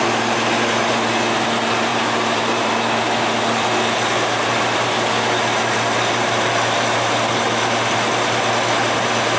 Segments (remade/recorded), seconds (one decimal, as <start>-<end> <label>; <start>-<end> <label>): 0.0-1.9 recorded; 1.9-2.7 remade; 2.7-9.4 recorded